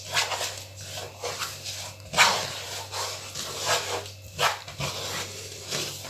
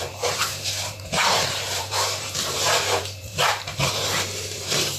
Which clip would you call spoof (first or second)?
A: second